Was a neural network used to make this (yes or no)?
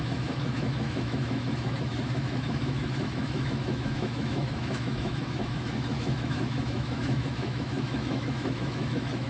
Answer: yes